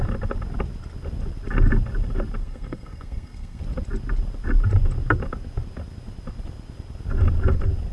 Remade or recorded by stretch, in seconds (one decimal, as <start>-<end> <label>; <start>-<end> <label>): 0.0-2.4 recorded; 2.4-3.6 remade; 3.6-7.9 recorded